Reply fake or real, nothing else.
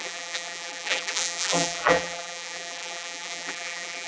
fake